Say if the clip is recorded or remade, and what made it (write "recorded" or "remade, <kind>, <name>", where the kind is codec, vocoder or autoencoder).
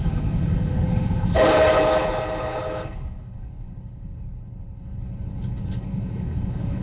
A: remade, codec, HILCodec